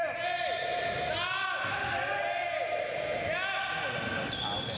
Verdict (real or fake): real